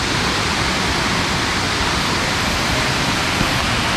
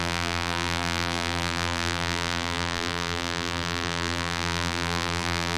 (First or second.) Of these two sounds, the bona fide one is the first